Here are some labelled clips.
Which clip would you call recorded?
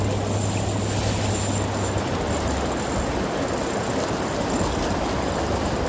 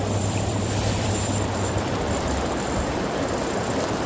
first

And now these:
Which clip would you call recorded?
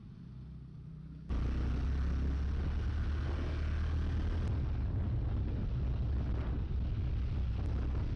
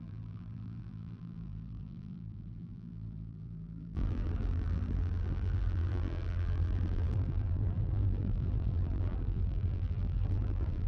first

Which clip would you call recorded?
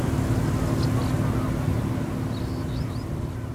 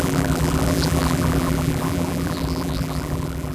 first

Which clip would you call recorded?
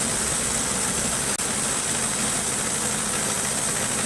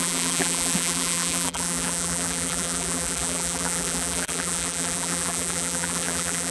first